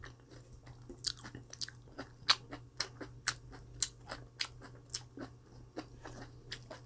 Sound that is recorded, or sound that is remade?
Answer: recorded